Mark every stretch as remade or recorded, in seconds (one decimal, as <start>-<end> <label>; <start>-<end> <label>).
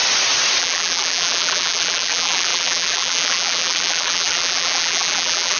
0.0-0.6 recorded; 0.6-5.6 remade